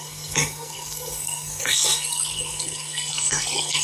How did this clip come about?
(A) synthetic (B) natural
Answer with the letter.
A